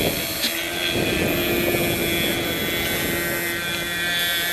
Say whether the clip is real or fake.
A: real